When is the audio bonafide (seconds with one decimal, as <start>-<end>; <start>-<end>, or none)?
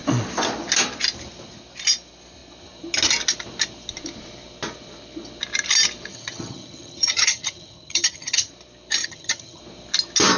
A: 0.0-6.1; 8.5-9.0; 9.6-10.4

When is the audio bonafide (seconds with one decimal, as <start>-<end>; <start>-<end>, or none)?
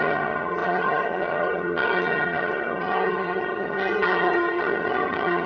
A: none